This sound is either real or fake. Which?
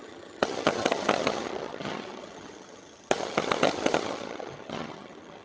fake